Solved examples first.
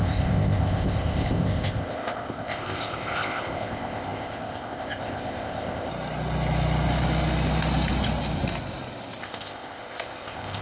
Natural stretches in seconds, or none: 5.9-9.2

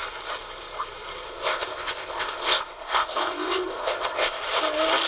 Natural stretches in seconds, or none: 0.0-1.3; 4.4-5.1

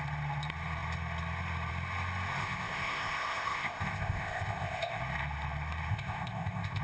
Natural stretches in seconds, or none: 0.0-2.4; 5.0-5.9

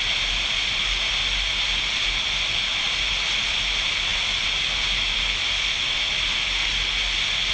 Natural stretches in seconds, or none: 0.0-7.5

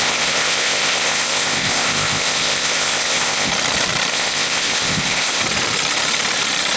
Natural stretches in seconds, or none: 3.5-4.1; 5.4-6.8

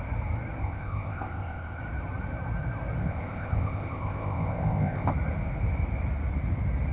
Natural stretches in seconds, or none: 0.0-0.6; 1.8-3.0; 5.1-6.9

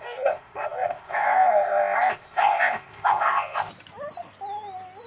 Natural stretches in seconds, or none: 3.7-5.1